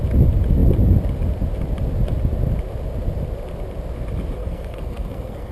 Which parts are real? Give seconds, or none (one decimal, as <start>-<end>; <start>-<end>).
0.0-4.4